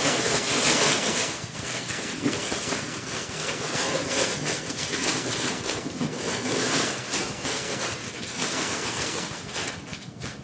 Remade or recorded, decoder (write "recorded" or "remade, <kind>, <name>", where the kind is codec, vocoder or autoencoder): remade, codec, SNAC